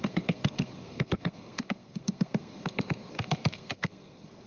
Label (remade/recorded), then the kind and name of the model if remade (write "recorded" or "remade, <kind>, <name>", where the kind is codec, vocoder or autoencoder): remade, codec, SNAC